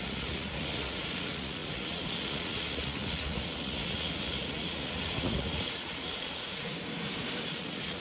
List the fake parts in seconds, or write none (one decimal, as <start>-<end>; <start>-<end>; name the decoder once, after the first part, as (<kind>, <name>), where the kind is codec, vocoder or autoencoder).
0.0-6.7 (vocoder, Vocos); 7.5-8.0